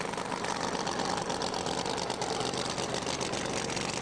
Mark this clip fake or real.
real